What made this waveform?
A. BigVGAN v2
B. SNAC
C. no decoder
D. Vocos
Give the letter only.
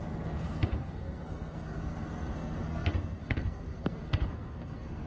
B